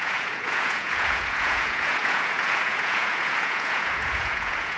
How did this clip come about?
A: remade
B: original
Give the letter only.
A